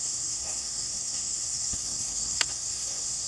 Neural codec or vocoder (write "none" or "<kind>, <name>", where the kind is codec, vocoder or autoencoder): codec, SNAC